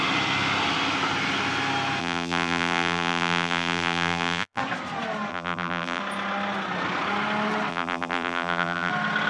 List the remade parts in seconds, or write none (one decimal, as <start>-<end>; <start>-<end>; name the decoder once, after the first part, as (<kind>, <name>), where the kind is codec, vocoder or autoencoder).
2.0-4.6 (vocoder, BigVGAN v2); 5.3-6.0; 7.7-8.9